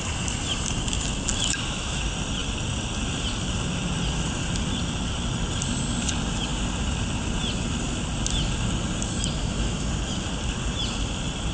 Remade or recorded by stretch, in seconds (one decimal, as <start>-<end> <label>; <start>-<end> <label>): 0.0-1.3 recorded; 1.3-2.0 remade; 2.0-9.4 recorded; 9.4-9.9 remade; 9.9-11.5 recorded